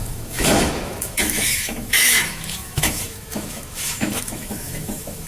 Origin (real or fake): fake